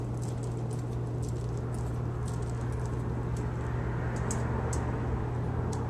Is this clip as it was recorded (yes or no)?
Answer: yes